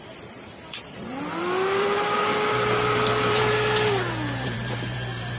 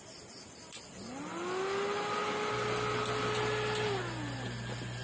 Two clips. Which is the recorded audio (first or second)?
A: second